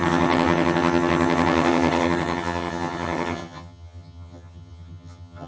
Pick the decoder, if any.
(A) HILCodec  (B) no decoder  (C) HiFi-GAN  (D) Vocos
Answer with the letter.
C